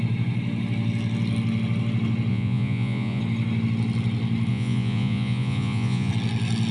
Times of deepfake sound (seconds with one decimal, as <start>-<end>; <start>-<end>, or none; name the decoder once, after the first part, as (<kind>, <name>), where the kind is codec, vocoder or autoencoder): 2.3-3.2 (vocoder, Vocos); 4.5-6.1